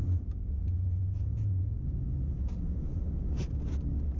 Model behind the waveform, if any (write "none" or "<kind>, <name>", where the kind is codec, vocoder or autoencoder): none